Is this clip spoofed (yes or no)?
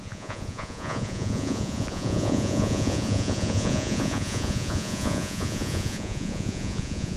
yes